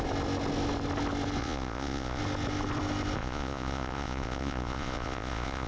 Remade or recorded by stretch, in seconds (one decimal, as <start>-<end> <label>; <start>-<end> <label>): 0.0-1.4 recorded; 1.4-2.2 remade; 2.2-3.2 recorded; 3.2-5.7 remade